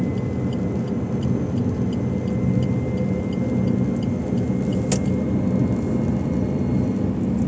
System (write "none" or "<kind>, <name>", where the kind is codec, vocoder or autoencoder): none